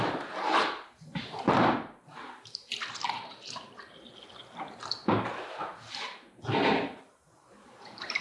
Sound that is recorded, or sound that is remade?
remade